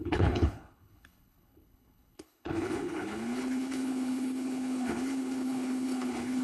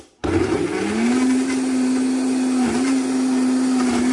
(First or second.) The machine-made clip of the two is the first